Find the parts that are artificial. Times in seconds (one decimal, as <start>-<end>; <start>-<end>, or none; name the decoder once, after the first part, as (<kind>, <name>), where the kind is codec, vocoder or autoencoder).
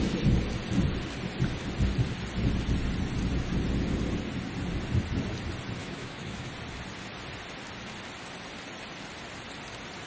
5.8-6.5 (autoencoder, DAC-VAE)